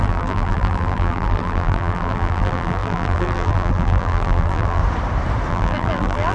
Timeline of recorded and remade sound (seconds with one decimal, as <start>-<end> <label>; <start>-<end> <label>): 0.0-4.8 remade; 4.8-5.5 recorded; 5.5-6.3 remade